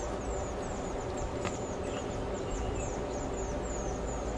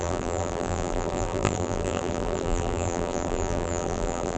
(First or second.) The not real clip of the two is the second